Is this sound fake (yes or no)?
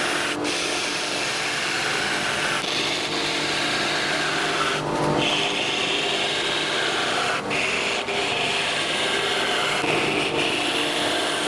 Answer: no